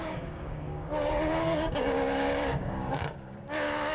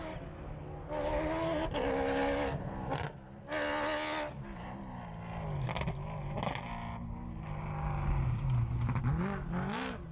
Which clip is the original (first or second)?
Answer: second